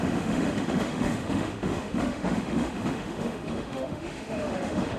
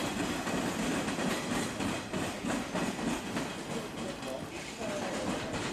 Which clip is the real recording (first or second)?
second